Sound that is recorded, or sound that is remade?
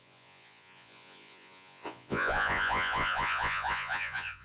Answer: remade